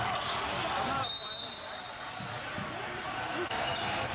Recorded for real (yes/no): yes